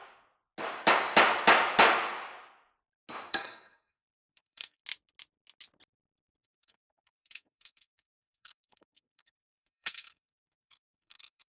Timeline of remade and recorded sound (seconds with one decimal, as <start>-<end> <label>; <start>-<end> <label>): 0.0-3.3 recorded; 3.3-4.8 remade; 4.8-6.4 recorded; 6.4-11.5 remade

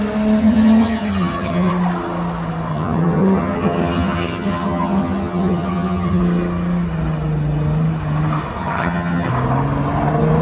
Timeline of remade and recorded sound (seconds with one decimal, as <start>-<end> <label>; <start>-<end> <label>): 0.0-0.4 recorded; 0.4-1.7 remade; 1.7-2.7 recorded; 2.7-6.2 remade; 6.2-8.6 recorded; 8.6-9.3 remade; 9.3-10.4 recorded

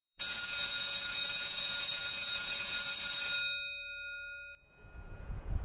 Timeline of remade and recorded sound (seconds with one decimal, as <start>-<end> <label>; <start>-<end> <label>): 0.0-2.9 remade; 2.9-4.7 recorded; 4.7-5.6 remade